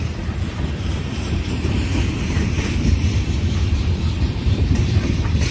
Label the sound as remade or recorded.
remade